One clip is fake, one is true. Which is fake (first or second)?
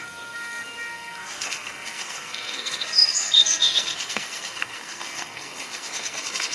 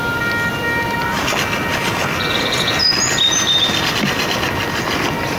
first